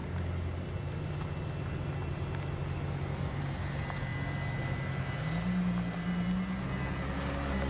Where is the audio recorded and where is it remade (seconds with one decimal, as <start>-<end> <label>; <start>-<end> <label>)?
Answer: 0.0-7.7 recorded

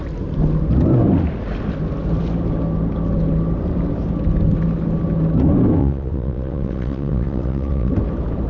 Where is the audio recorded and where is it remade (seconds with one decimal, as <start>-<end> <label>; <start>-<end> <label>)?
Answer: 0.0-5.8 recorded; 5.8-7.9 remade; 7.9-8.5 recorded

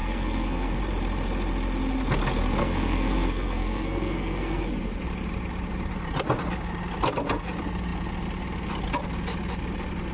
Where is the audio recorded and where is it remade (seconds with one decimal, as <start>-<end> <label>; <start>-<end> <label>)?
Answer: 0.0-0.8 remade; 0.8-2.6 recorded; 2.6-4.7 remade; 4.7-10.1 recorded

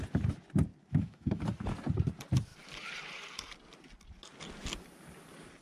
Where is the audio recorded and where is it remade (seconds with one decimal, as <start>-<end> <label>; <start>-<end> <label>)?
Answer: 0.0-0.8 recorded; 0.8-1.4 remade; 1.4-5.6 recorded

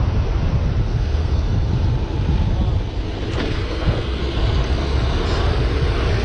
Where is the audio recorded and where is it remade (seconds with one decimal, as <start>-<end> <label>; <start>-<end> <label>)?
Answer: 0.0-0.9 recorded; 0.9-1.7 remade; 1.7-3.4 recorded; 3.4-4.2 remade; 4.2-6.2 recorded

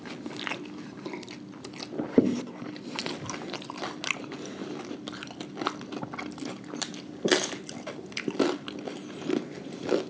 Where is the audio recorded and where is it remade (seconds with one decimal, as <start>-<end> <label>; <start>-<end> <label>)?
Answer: 0.0-10.1 recorded

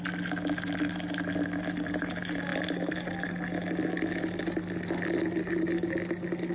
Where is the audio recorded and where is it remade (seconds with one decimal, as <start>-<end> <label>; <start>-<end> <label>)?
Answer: 0.0-6.5 recorded